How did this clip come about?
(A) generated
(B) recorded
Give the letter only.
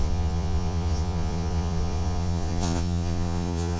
A